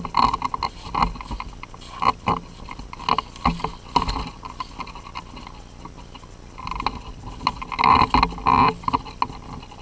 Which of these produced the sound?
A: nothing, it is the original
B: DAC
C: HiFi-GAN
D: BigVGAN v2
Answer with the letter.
A